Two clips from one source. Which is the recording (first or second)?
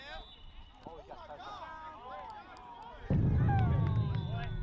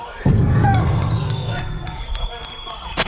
first